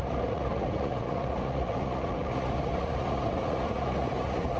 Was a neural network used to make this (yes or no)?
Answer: yes